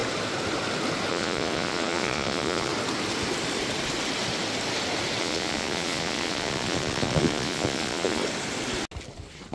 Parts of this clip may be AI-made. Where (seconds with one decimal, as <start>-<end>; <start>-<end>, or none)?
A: 1.1-2.7; 5.2-8.2